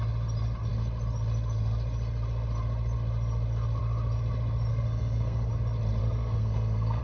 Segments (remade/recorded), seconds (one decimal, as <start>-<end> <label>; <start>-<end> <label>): 0.0-4.7 recorded; 4.7-5.5 remade; 5.5-6.0 recorded; 6.0-7.0 remade

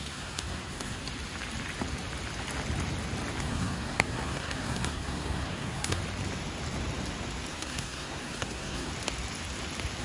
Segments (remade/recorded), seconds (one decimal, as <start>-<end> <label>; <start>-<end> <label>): 0.0-1.0 remade; 1.0-3.4 recorded; 3.4-6.0 remade; 6.0-7.5 recorded; 7.5-8.9 remade; 8.9-10.0 recorded

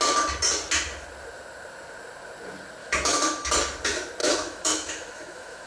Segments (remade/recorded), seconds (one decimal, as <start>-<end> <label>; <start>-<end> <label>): 0.0-2.8 recorded; 2.8-3.5 remade; 3.5-4.2 recorded; 4.2-5.7 remade

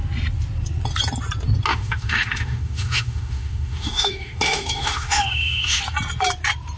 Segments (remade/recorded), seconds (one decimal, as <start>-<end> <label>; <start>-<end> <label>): 0.0-1.7 recorded; 1.7-5.8 remade; 5.8-6.8 recorded

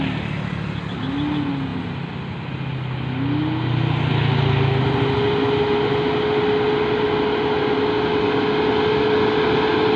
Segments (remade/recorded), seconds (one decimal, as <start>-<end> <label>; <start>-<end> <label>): 0.0-10.0 recorded

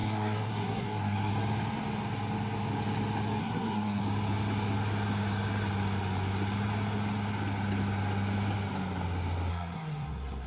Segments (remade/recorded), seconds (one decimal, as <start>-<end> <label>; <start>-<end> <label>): 0.0-1.3 remade; 1.3-3.4 recorded; 3.4-4.0 remade; 4.0-9.5 recorded; 9.5-10.5 remade